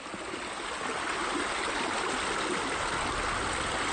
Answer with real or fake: real